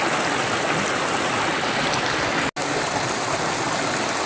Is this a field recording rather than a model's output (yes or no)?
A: yes